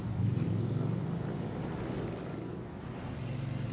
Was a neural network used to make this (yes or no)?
no